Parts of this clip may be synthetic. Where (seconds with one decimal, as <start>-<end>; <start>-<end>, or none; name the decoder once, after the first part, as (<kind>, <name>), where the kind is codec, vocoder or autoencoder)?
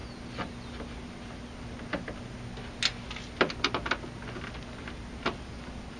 none